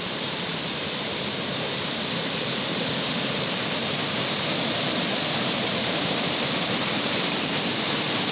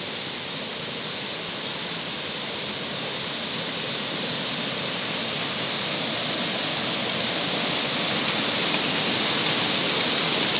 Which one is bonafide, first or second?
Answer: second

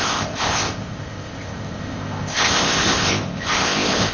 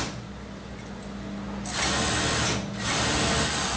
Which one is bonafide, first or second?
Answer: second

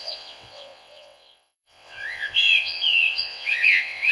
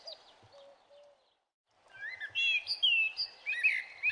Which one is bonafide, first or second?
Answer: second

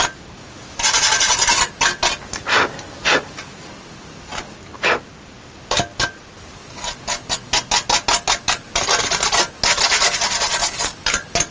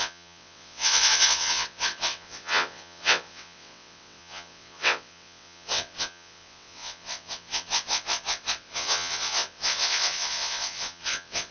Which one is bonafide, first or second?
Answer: first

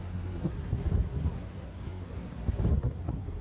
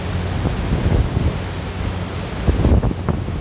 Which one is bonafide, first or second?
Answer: second